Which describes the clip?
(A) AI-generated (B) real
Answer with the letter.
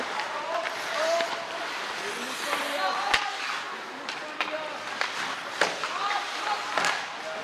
B